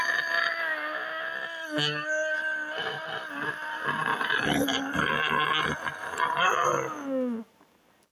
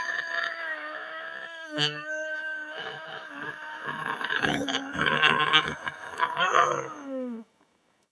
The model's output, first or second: second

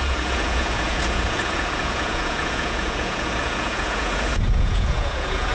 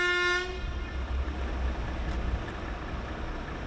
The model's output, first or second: first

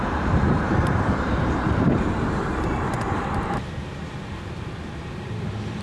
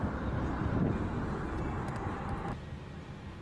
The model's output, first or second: first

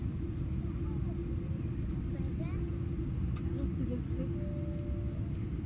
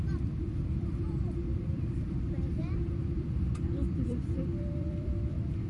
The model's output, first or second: second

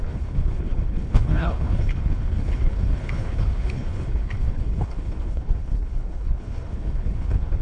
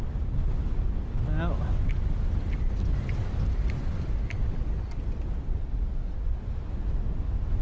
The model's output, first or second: first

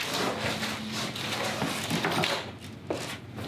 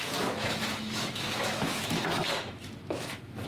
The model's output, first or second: second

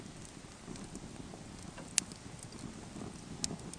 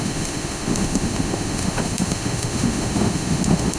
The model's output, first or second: second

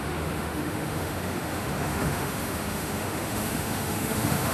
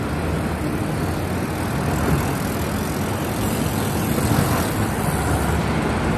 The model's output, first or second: first